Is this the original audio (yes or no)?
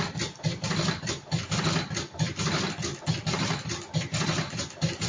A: yes